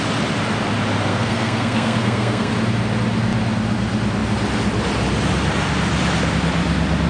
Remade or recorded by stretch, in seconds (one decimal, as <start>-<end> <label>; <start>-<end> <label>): 0.0-1.1 recorded; 1.1-2.5 remade; 2.5-7.1 recorded